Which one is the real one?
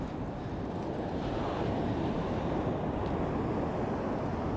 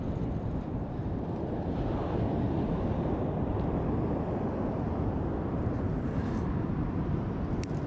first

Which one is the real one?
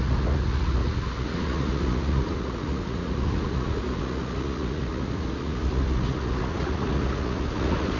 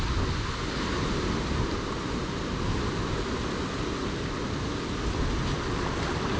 second